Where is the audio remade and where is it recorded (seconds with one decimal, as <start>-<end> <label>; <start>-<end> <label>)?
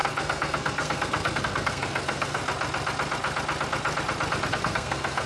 0.0-2.4 remade; 2.4-4.5 recorded; 4.5-5.3 remade